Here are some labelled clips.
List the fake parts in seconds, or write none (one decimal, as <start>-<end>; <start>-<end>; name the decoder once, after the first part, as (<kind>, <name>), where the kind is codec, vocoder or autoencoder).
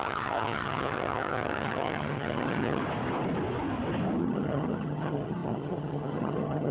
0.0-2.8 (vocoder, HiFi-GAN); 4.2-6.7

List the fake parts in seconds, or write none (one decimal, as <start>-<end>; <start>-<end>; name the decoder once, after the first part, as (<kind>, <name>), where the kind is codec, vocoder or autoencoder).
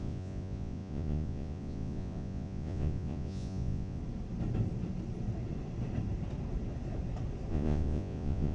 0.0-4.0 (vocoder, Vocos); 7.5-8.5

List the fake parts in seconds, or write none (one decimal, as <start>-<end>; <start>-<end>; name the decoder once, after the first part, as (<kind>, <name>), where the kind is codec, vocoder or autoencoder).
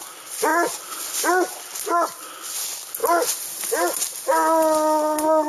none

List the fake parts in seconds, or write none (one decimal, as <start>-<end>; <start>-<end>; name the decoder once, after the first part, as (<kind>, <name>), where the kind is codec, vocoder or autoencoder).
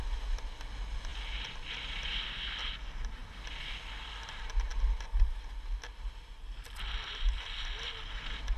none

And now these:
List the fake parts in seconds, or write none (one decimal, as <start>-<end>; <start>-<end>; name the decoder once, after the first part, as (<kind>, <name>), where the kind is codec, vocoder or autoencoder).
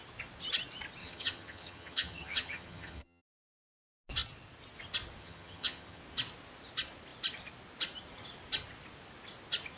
1.0-3.2 (vocoder, HiFi-GAN); 5.2-6.0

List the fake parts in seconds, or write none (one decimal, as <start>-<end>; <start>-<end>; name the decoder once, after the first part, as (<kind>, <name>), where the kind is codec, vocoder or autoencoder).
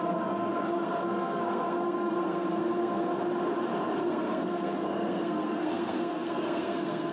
0.0-3.1 (codec, SNAC); 4.0-7.1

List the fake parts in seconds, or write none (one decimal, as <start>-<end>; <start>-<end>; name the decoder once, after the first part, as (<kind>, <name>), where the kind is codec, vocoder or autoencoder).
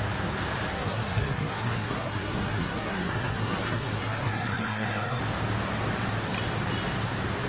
0.7-5.2 (codec, SNAC)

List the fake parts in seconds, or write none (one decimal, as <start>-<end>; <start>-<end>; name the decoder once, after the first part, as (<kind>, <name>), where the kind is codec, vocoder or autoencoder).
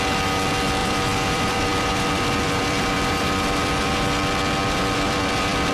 0.8-4.0 (vocoder, BigVGAN v2); 4.6-5.7